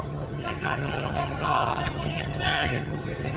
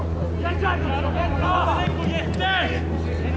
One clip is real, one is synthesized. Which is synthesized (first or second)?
first